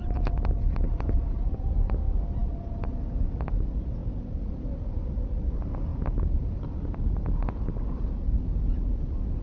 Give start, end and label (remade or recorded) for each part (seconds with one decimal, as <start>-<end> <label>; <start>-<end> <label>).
0.0-9.4 recorded